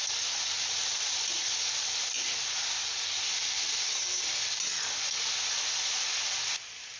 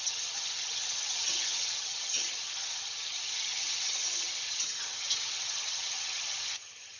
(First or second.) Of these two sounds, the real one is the first